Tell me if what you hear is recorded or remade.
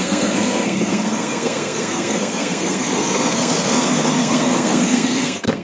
remade